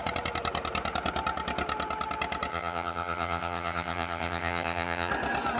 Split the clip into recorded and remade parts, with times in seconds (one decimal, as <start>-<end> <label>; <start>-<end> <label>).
0.0-2.5 recorded; 2.5-5.1 remade; 5.1-5.6 recorded